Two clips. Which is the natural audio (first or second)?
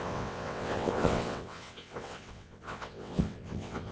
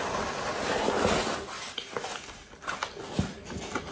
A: second